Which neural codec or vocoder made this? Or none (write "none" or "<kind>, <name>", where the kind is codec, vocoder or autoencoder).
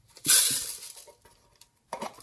none